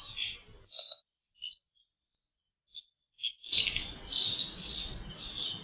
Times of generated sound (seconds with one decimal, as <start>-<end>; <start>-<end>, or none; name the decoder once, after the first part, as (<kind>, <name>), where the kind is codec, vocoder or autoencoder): none